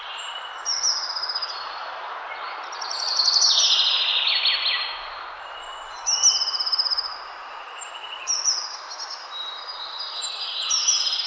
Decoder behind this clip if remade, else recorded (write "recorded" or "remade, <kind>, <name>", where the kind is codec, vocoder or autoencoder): recorded